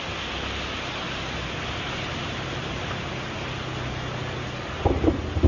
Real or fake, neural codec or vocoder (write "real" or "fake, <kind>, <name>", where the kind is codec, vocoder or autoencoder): real